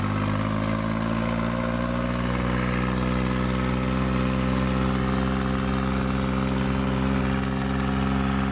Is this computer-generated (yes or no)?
no